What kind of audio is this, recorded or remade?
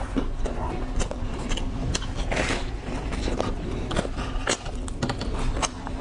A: recorded